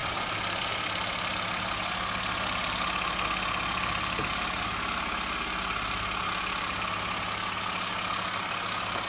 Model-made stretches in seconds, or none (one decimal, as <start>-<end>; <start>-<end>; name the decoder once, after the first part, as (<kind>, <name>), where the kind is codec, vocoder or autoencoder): none